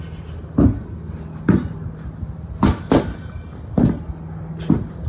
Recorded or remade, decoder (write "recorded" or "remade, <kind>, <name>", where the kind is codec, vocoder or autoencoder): recorded